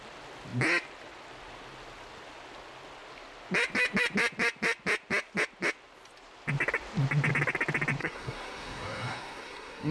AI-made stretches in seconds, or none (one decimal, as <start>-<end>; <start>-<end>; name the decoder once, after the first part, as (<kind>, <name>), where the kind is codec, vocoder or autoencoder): 8.0-9.9 (codec, SNAC)